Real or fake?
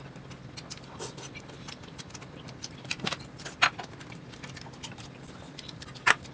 real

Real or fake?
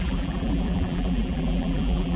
fake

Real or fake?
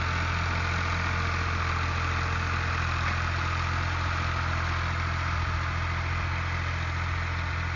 real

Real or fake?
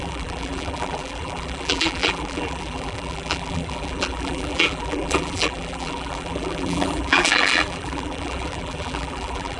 fake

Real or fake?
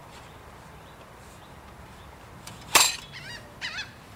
fake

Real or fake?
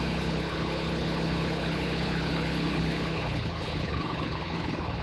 fake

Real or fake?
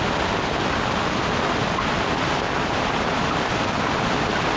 real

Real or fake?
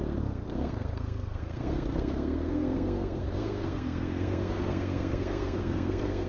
fake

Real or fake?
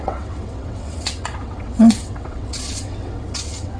fake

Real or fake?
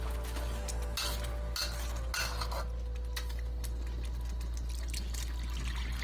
real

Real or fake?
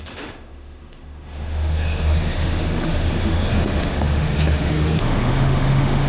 fake